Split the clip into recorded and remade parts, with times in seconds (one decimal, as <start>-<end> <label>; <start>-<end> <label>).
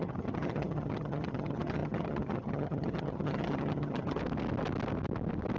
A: 0.0-4.2 remade; 4.2-5.6 recorded